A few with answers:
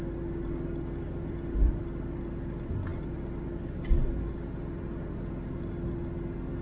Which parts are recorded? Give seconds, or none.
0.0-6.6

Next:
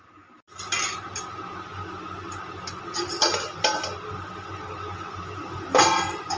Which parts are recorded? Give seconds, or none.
0.0-6.4

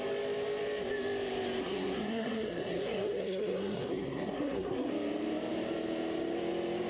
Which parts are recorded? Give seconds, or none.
0.0-1.6; 4.9-6.9

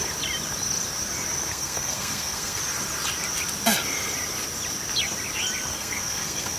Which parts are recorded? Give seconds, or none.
0.0-1.5; 2.6-5.7

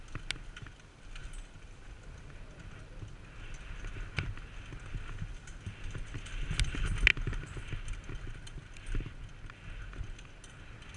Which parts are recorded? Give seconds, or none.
0.0-11.0